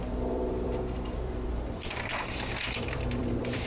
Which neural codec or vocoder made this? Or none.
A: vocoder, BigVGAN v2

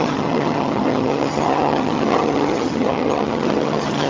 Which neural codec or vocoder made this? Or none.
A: vocoder, HiFi-GAN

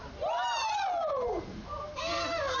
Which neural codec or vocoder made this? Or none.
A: none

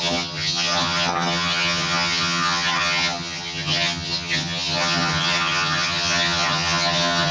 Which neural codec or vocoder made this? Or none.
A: vocoder, HiFi-GAN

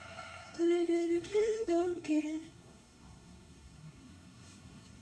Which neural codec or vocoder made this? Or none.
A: codec, SNAC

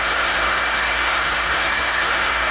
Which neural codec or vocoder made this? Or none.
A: codec, SNAC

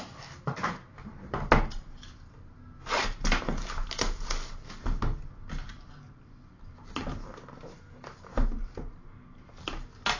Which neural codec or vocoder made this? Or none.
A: none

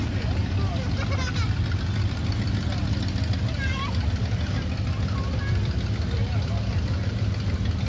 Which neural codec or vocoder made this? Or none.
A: none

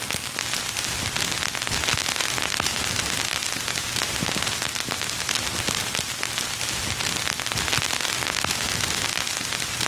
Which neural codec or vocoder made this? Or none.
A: none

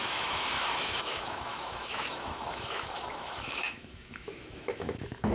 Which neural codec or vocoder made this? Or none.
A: autoencoder, DAC-VAE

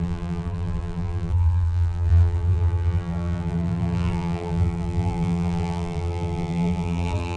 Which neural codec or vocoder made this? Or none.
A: vocoder, BigVGAN v2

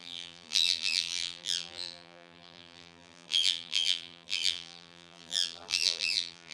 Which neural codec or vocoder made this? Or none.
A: vocoder, BigVGAN v2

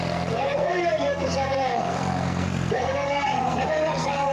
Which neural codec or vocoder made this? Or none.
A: codec, SNAC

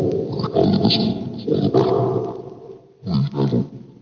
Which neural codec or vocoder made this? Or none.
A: vocoder, BigVGAN v2